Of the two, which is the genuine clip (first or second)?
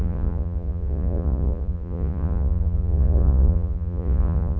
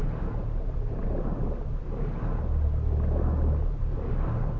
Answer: second